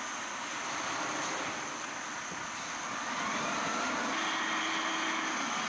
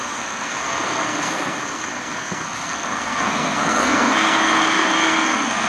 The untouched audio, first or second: first